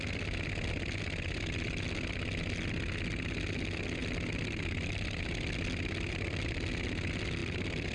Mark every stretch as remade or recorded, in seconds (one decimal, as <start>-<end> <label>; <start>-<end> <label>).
0.0-4.0 recorded; 4.0-6.7 remade; 6.7-7.4 recorded; 7.4-7.9 remade

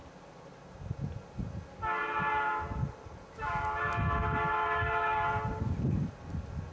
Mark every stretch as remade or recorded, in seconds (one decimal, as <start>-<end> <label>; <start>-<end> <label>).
0.0-1.1 remade; 1.1-2.0 recorded; 2.0-5.8 remade; 5.8-6.7 recorded